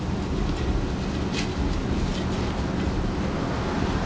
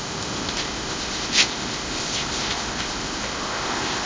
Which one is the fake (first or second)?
second